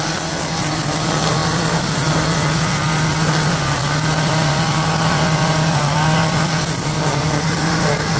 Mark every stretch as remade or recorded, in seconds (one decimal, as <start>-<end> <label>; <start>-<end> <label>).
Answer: 0.0-8.2 recorded